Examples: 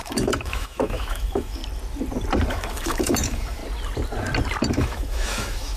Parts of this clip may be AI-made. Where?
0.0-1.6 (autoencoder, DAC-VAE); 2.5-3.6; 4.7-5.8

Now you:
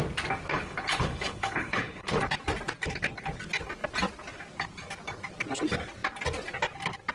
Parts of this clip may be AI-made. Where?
0.5-2.2 (codec, HILCodec)

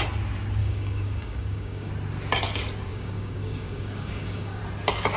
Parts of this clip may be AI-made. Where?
0.6-1.9 (codec, DAC); 2.9-4.6